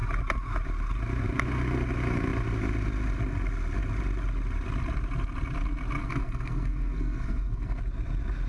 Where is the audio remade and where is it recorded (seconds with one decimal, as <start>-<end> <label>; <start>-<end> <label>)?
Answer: 0.0-6.0 recorded; 6.0-7.8 remade; 7.8-8.5 recorded